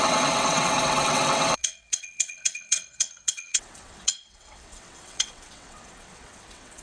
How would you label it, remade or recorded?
remade